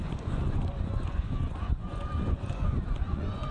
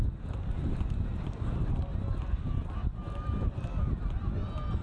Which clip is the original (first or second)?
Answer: second